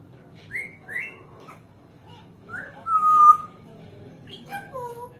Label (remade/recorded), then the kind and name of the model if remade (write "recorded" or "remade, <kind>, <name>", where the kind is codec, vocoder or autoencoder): remade, codec, DAC